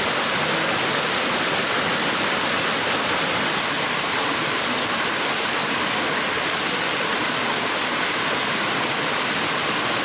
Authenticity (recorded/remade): recorded